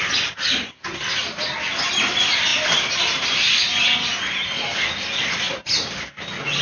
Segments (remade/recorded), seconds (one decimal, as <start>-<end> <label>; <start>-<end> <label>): 0.0-6.6 recorded

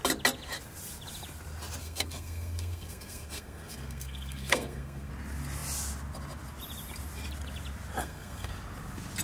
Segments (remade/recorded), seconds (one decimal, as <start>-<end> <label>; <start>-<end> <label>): 0.0-1.8 recorded; 1.8-5.1 remade; 5.1-8.0 recorded; 8.0-8.5 remade; 8.5-9.2 recorded

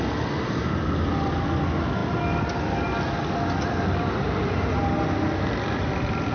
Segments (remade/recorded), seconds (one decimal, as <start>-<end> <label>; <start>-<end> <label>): 0.0-6.3 recorded

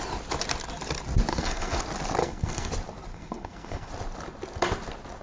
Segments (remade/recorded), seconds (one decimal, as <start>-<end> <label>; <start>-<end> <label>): 0.0-1.3 recorded; 1.3-1.8 remade; 1.8-2.2 recorded; 2.2-2.7 remade; 2.7-3.1 recorded; 3.1-3.9 remade; 3.9-5.2 recorded

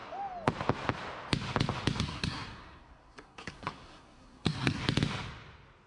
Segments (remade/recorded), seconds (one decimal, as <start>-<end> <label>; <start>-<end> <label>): 0.0-2.0 recorded; 2.0-4.8 remade; 4.8-5.9 recorded